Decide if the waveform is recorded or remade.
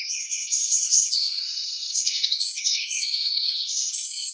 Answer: remade